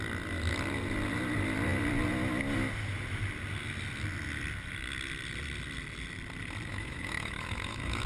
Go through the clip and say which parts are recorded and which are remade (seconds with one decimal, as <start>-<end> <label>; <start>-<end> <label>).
0.0-6.7 recorded; 6.7-8.1 remade